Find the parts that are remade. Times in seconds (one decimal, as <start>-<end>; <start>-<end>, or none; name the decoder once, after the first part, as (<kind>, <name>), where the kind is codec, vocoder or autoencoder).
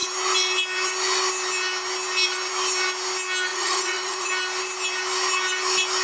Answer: 3.5-4.3 (vocoder, Vocos)